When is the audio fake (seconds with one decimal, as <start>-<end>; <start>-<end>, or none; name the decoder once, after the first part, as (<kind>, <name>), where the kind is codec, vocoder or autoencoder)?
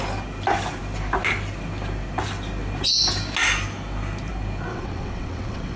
4.7-5.8 (vocoder, WaveNeXt)